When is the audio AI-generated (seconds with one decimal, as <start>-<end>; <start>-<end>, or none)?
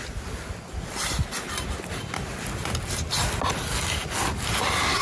none